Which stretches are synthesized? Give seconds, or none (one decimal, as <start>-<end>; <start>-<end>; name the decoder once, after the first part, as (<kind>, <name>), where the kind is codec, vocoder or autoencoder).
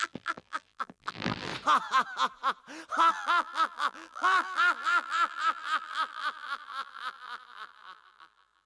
0.0-1.5 (vocoder, BigVGAN v2); 3.1-8.7